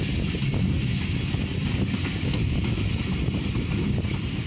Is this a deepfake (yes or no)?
no